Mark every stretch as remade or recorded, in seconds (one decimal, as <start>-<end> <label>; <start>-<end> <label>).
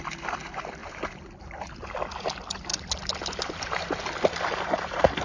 0.0-0.8 recorded; 0.8-1.3 remade; 1.3-5.2 recorded